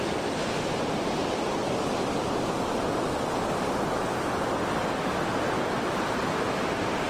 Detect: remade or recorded recorded